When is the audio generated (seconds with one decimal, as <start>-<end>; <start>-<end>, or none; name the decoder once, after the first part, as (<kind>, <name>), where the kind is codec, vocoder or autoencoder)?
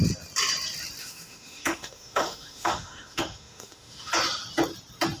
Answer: 1.0-4.1 (autoencoder, DAC-VAE)